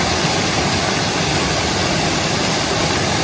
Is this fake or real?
real